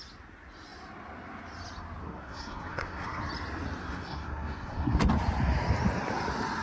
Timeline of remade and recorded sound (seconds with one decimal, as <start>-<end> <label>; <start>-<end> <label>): 0.0-2.0 recorded; 2.0-3.2 remade; 3.2-3.8 recorded; 3.8-5.1 remade; 5.1-6.6 recorded